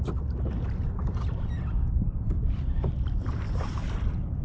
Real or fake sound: fake